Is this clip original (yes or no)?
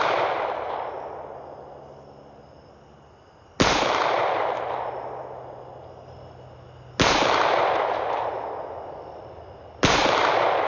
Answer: yes